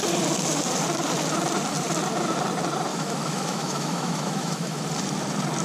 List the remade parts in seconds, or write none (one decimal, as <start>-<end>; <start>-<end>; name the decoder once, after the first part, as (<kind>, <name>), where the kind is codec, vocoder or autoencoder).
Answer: 2.9-4.8 (autoencoder, DAC-VAE)